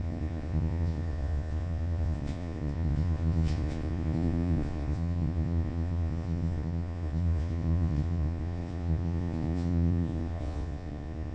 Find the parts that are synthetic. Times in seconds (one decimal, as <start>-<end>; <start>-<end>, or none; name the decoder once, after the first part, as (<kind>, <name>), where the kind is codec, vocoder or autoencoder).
0.0-11.3 (vocoder, Vocos)